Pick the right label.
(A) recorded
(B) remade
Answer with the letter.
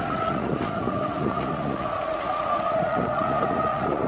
B